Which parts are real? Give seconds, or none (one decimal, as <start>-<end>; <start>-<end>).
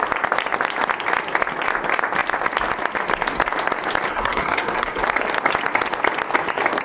0.0-4.1; 5.0-6.8